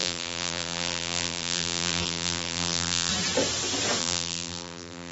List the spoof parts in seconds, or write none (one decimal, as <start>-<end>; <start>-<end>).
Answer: 0.0-3.1; 4.0-5.1